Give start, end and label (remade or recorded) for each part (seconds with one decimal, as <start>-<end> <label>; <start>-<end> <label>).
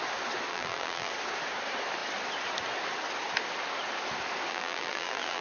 0.0-0.5 recorded; 0.5-1.1 remade; 1.1-4.5 recorded; 4.5-5.4 remade